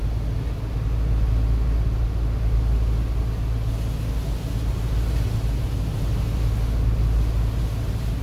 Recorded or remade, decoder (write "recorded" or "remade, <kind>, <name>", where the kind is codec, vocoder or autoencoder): recorded